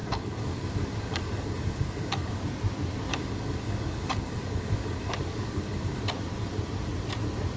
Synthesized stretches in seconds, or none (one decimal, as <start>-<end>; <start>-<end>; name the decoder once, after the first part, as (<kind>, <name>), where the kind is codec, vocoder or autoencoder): 0.0-2.4 (codec, DAC); 3.1-6.0